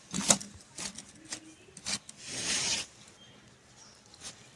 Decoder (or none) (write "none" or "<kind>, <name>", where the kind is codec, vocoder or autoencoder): none